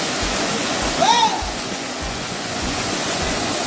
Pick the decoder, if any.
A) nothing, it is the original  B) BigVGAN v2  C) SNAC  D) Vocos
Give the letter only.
D